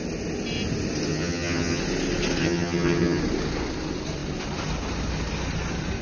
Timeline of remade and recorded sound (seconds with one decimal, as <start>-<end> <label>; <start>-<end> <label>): 0.0-1.1 recorded; 1.1-1.8 remade; 1.8-2.4 recorded; 2.4-3.2 remade; 3.2-6.0 recorded

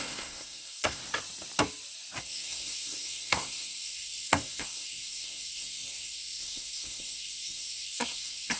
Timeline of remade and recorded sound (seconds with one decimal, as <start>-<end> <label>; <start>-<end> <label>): 0.0-1.0 remade; 1.0-2.2 recorded; 2.2-8.6 remade

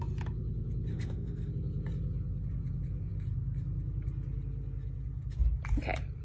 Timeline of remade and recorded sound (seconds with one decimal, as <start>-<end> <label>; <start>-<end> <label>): 0.0-0.9 recorded; 0.9-1.5 remade; 1.5-6.2 recorded

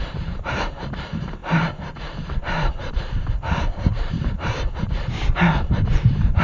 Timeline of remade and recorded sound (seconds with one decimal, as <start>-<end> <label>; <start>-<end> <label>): 0.0-6.4 remade

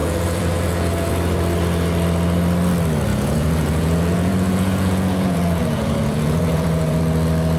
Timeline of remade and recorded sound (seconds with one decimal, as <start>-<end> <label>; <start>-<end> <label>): 0.0-1.1 remade; 1.1-3.1 recorded; 3.1-7.0 remade; 7.0-7.6 recorded

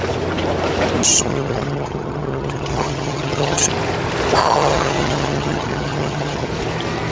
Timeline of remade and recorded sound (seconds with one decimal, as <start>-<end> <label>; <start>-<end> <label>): 0.0-1.1 recorded; 1.1-3.7 remade; 3.7-4.4 recorded; 4.4-6.5 remade; 6.5-7.1 recorded